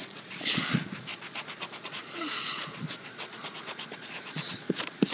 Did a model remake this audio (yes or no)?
yes